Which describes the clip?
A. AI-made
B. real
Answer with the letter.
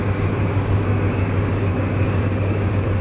A